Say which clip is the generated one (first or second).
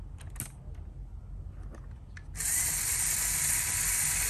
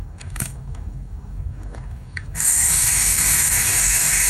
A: second